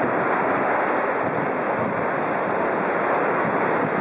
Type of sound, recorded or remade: recorded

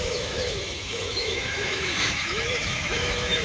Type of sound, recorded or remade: remade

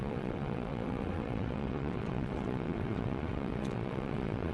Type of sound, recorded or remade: remade